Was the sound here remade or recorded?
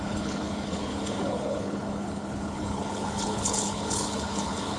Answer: remade